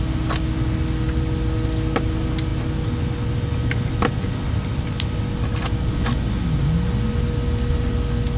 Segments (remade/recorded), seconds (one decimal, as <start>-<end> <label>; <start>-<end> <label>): 0.0-8.4 recorded